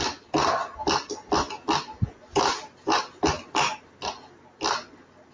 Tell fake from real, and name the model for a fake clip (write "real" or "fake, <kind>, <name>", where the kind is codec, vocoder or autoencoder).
real